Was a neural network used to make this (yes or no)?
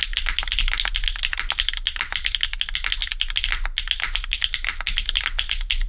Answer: no